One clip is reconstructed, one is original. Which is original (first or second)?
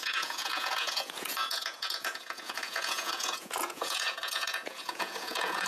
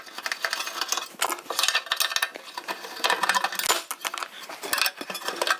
second